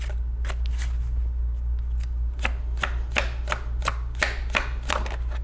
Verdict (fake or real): real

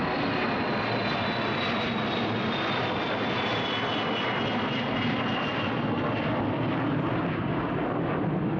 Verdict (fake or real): real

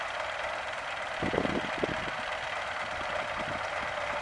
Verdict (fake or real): real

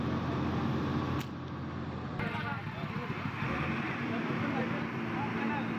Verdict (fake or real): real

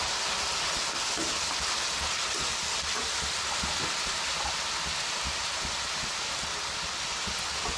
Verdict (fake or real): real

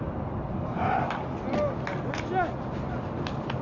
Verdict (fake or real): real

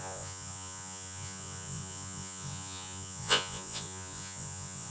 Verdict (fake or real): fake